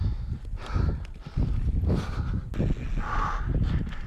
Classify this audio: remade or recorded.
recorded